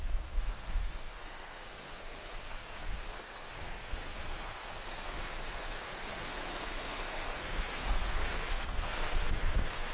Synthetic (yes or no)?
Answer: yes